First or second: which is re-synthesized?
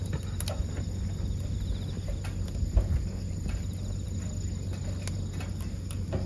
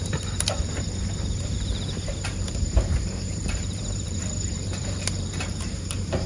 second